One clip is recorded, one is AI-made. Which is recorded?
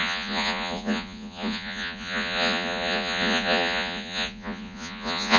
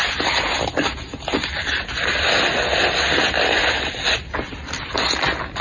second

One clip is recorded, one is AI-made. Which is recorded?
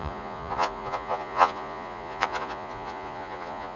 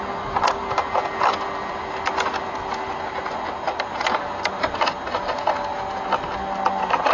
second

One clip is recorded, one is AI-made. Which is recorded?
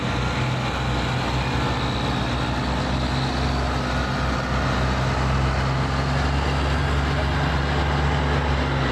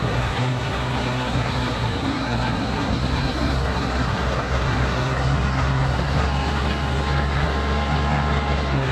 first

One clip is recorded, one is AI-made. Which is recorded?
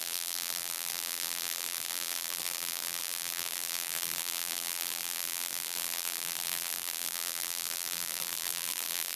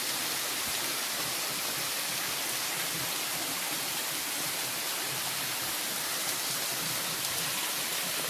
second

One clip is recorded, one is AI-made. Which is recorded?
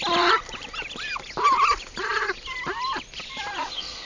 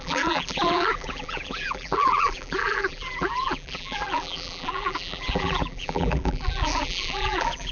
first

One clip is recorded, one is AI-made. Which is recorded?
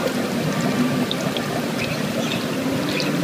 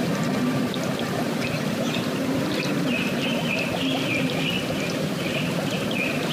first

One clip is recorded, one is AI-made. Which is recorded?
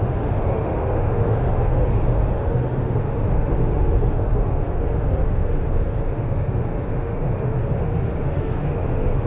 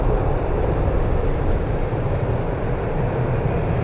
second